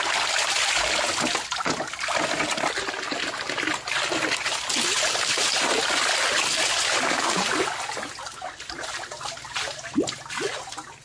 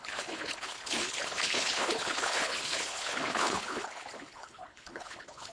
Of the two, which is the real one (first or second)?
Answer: first